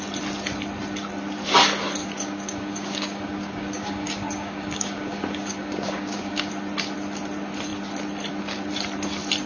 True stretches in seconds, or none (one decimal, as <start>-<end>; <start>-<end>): 0.0-2.0; 6.5-9.5